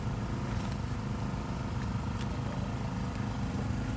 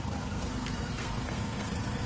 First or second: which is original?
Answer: first